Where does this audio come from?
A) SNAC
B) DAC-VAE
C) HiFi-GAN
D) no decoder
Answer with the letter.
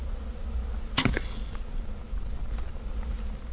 D